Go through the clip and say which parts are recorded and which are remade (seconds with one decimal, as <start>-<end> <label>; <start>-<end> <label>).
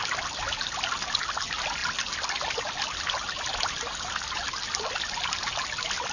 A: 0.0-6.1 recorded